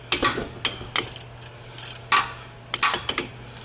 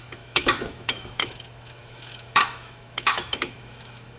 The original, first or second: first